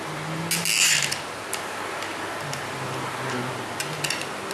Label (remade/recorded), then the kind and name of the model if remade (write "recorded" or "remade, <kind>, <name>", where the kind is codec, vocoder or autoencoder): recorded